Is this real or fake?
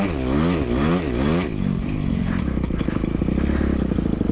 real